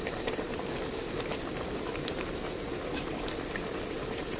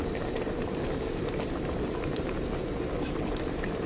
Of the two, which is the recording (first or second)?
second